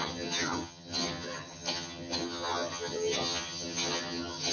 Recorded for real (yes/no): no